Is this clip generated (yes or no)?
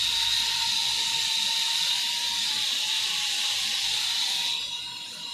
no